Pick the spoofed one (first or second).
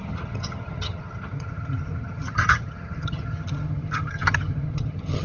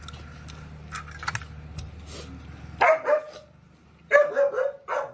first